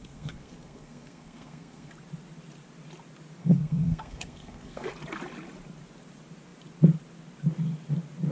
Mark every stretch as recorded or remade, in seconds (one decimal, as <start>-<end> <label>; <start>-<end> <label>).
0.0-1.9 remade; 1.9-3.4 recorded; 3.4-4.9 remade; 4.9-8.3 recorded